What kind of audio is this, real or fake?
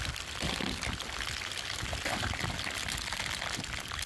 real